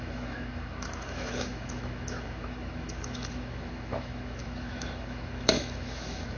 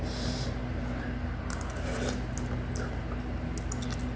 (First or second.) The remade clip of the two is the first